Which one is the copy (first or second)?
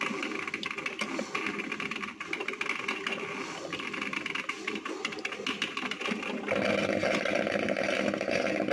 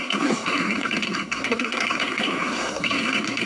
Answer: second